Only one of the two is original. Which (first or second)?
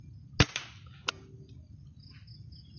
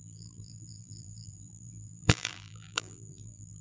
first